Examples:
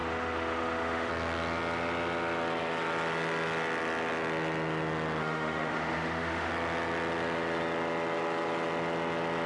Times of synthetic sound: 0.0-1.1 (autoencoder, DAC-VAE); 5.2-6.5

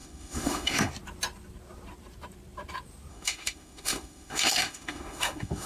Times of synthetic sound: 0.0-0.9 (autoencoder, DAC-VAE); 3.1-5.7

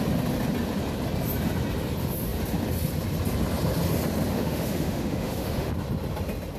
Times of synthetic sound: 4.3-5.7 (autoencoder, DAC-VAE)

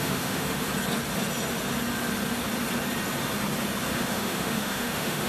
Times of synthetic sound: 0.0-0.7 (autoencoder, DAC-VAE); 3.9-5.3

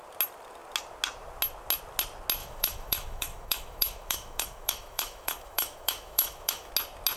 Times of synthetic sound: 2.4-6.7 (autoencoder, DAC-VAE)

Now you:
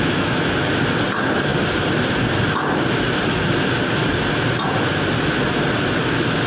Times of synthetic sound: 0.0-0.7 (autoencoder, DAC-VAE)

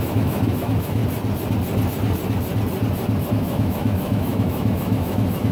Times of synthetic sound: 0.0-1.0 (autoencoder, DAC-VAE); 3.3-5.5

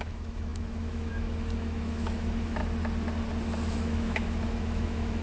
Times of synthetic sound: 0.0-2.6 (autoencoder, DAC-VAE); 3.7-5.2